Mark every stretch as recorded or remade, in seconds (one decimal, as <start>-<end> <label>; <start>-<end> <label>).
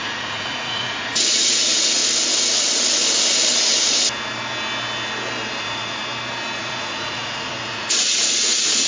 0.0-2.0 remade; 2.0-5.6 recorded; 5.6-6.0 remade; 6.0-6.6 recorded; 6.6-8.9 remade